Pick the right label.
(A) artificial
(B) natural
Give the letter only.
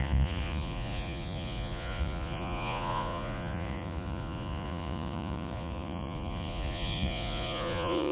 A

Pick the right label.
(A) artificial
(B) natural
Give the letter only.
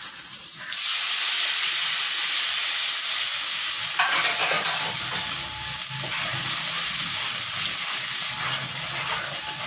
B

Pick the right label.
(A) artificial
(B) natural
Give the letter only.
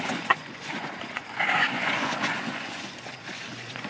A